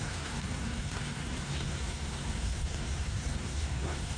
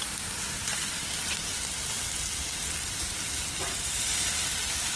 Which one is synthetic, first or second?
first